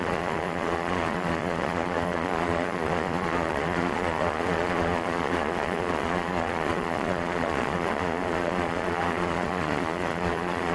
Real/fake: fake